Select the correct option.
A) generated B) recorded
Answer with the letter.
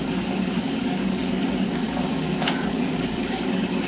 A